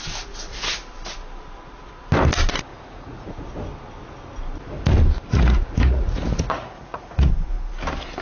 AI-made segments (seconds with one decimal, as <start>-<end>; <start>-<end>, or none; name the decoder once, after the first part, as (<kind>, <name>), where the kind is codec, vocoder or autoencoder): 2.7-3.5 (vocoder, Vocos); 5.3-7.3